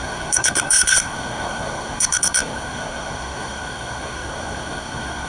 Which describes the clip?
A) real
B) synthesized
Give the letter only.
B